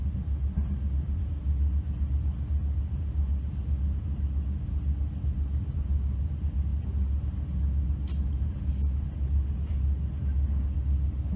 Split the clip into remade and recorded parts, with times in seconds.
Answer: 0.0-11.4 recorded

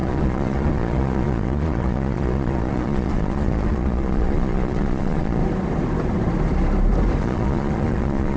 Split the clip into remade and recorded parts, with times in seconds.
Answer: 0.0-5.4 remade; 5.4-7.2 recorded; 7.2-8.4 remade

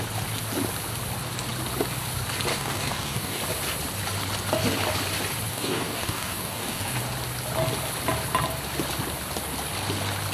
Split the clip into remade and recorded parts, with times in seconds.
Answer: 0.0-2.5 recorded; 2.5-3.4 remade; 3.4-5.5 recorded; 5.5-7.0 remade; 7.0-10.3 recorded

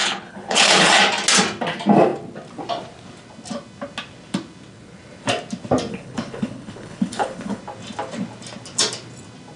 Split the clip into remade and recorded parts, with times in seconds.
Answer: 0.0-0.9 remade; 0.9-5.9 recorded; 5.9-7.6 remade; 7.6-9.6 recorded